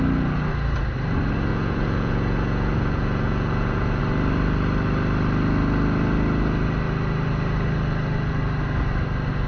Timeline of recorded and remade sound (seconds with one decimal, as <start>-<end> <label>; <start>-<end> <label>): 0.0-1.5 recorded; 1.5-4.0 remade; 4.0-9.5 recorded